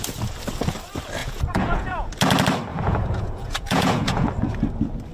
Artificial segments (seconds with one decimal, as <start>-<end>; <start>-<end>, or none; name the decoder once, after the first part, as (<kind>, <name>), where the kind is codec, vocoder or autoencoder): 1.2-2.1 (vocoder, Vocos); 2.7-4.3